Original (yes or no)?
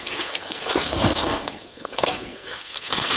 no